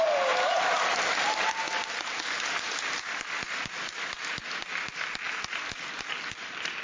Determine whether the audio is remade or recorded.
recorded